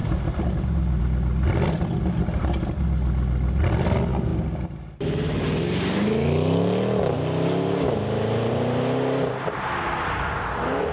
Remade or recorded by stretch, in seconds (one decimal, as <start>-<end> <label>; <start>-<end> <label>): 0.0-10.9 recorded